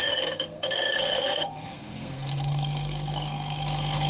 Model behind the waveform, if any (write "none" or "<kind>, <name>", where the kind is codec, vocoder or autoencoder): codec, SNAC